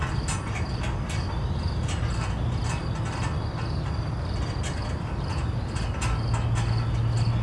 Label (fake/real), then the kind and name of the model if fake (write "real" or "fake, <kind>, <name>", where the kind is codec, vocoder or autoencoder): real